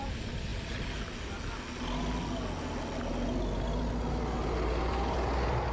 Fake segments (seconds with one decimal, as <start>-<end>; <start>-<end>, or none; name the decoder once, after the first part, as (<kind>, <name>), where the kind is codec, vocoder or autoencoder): none